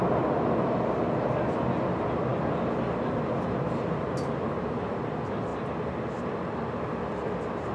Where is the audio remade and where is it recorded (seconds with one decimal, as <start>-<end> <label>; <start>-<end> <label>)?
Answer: 0.0-7.7 recorded